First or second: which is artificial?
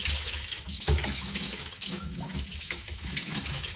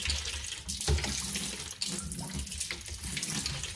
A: first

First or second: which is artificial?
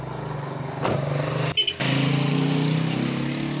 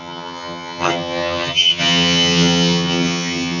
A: second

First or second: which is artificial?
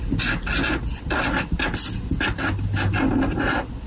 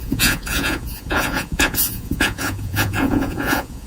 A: second